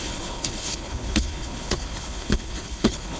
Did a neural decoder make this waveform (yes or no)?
yes